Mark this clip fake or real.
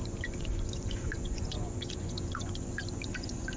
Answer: fake